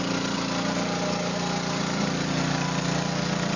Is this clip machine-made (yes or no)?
no